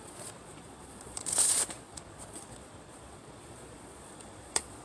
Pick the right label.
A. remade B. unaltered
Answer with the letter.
A